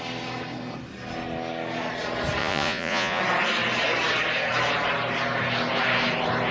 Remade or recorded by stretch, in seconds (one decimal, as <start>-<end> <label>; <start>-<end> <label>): 0.0-2.4 recorded; 2.4-3.2 remade; 3.2-6.5 recorded